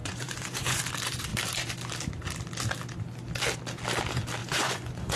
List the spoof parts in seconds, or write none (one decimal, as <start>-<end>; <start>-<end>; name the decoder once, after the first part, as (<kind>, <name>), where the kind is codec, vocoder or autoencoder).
0.0-0.8 (vocoder, Vocos); 4.4-5.2